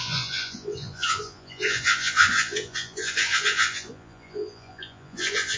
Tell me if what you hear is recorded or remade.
remade